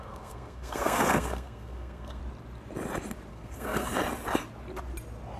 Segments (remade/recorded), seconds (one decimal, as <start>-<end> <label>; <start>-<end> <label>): 0.0-2.2 remade; 2.2-3.3 recorded; 3.3-3.9 remade; 3.9-5.4 recorded